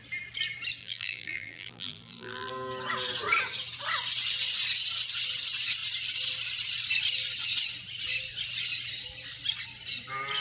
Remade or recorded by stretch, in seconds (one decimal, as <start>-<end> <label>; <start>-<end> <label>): 0.0-0.8 recorded; 0.8-2.5 remade; 2.5-10.4 recorded